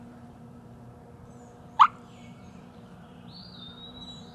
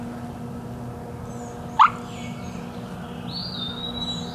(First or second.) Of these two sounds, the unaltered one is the second